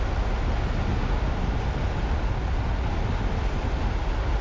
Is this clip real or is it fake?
real